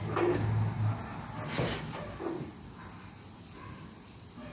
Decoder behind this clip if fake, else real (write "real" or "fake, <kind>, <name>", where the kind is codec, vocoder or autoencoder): real